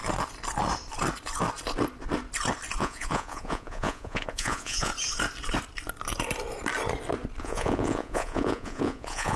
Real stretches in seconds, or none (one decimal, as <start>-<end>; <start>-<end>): 0.0-2.8; 4.9-7.4